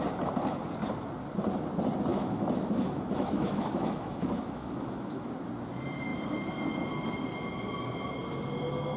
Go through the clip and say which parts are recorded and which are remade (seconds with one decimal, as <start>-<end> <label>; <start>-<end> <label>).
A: 0.0-2.1 recorded; 2.1-5.3 remade; 5.3-9.0 recorded